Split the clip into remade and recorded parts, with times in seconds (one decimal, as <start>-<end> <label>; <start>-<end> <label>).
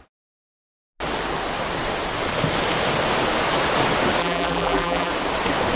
0.0-4.2 recorded; 4.2-5.1 remade; 5.1-5.8 recorded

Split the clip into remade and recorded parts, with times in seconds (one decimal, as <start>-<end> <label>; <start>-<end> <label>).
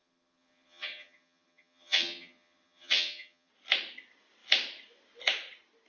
0.0-3.5 remade; 3.5-5.9 recorded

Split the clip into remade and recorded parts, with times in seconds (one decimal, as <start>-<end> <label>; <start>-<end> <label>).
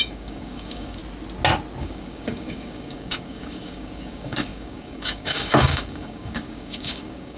0.0-1.0 remade; 1.0-1.8 recorded; 1.8-7.4 remade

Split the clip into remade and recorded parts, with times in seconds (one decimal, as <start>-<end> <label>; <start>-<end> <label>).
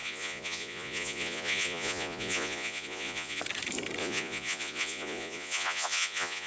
0.0-3.4 remade; 3.4-4.0 recorded; 4.0-6.5 remade